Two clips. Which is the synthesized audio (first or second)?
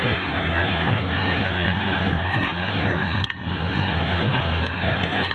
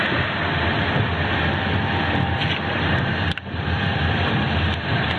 first